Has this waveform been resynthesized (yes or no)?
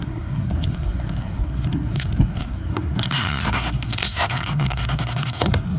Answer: yes